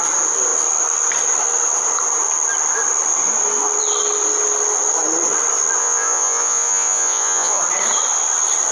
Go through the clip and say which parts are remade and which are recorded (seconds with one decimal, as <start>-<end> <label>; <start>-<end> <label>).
0.0-5.8 recorded; 5.8-7.6 remade; 7.6-8.7 recorded